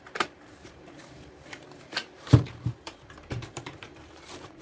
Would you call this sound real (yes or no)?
no